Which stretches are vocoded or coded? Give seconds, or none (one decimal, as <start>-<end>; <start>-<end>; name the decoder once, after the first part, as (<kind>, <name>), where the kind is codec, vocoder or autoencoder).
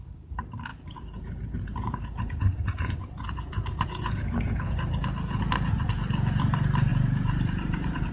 0.7-5.4 (vocoder, Vocos); 6.9-8.1